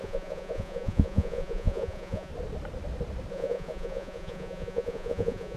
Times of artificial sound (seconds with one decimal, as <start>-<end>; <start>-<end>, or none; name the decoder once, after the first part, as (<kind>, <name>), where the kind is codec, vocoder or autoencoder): 0.0-2.3 (vocoder, Vocos); 3.3-5.6